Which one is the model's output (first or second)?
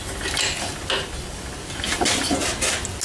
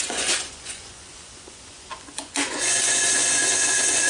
second